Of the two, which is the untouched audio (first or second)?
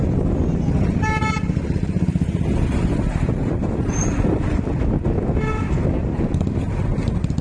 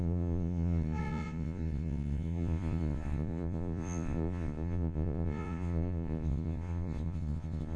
first